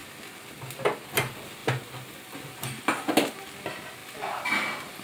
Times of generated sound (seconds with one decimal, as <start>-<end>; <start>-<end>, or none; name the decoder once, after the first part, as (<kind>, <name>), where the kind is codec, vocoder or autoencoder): none